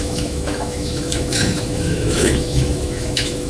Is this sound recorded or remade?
remade